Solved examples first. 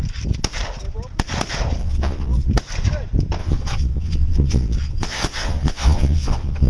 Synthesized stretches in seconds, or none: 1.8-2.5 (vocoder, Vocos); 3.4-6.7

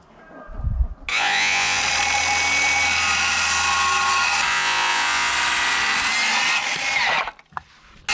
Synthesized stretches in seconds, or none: 1.1-1.8 (vocoder, Vocos); 4.5-5.3

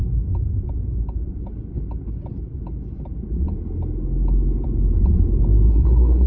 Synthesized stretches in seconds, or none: 5.7-6.3 (codec, SNAC)